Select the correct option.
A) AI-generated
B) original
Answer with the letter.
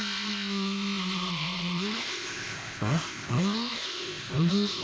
A